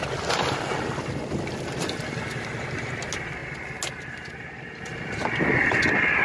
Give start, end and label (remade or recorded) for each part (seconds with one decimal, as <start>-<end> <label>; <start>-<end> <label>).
0.0-6.2 recorded